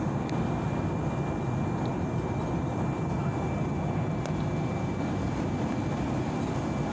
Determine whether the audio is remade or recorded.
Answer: recorded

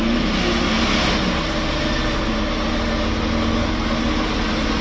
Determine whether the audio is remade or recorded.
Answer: recorded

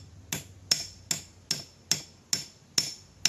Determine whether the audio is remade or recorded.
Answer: recorded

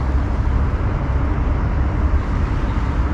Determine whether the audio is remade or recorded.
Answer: recorded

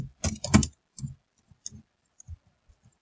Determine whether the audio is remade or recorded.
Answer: recorded